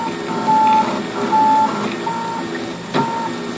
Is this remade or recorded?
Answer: recorded